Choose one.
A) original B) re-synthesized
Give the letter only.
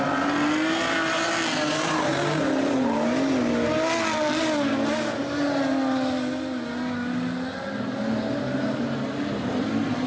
A